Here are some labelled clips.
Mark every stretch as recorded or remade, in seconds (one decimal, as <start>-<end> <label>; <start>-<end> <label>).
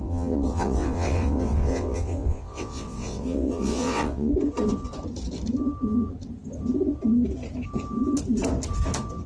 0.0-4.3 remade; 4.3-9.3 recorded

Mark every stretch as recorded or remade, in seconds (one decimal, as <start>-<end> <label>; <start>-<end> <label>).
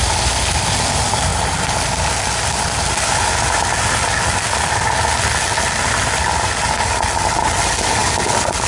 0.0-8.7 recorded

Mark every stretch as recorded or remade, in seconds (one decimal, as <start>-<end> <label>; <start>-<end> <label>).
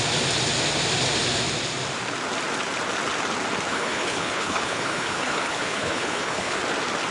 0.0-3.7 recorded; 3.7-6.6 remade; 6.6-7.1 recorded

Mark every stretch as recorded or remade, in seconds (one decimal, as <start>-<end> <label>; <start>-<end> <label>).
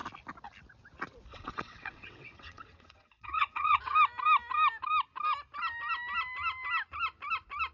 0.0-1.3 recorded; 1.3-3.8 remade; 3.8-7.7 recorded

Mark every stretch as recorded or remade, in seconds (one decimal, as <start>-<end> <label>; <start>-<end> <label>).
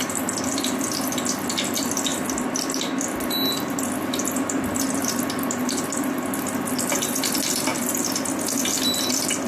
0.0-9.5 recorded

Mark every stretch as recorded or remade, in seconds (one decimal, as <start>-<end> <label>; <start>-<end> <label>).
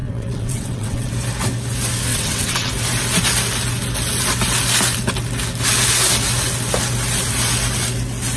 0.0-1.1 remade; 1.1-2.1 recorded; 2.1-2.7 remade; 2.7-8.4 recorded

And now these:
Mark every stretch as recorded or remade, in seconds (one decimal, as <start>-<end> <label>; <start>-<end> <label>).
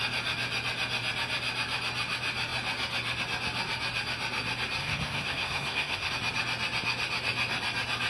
0.0-4.8 recorded; 4.8-6.1 remade; 6.1-8.1 recorded